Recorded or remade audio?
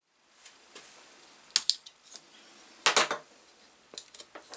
recorded